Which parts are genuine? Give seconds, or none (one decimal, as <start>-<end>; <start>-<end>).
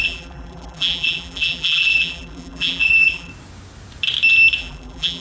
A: 3.3-4.6